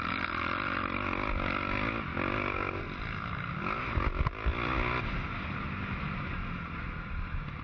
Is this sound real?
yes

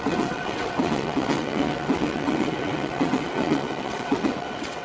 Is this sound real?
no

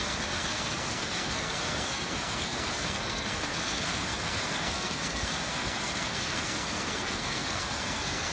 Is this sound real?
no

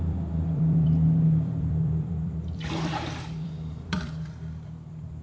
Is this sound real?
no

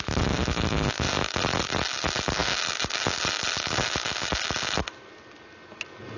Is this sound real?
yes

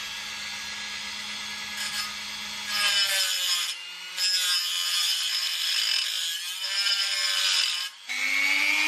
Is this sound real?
yes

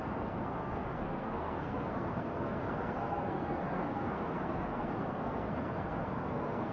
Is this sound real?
no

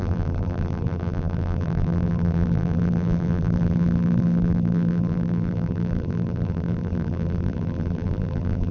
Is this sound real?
no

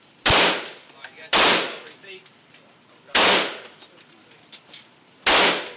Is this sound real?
no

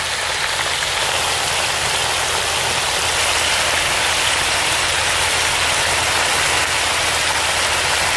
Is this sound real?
yes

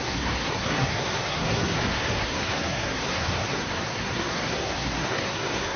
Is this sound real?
no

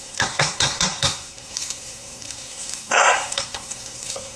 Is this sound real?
no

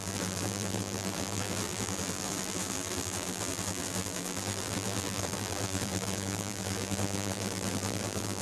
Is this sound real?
no